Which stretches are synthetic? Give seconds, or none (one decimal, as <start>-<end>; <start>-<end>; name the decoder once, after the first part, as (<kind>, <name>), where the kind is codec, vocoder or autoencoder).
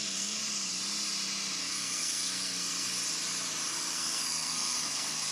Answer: 0.0-0.4 (codec, SNAC); 1.6-2.9; 3.7-5.3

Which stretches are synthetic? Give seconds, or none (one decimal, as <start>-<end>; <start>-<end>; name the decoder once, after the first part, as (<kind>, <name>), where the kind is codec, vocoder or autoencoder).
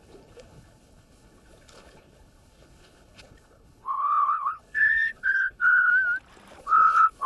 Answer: 0.0-5.9 (codec, HILCodec); 6.6-7.3